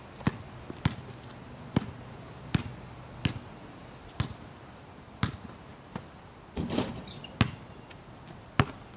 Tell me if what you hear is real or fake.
real